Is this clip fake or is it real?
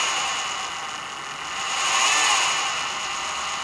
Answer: real